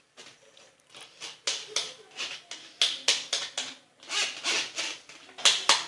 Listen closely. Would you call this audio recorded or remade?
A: recorded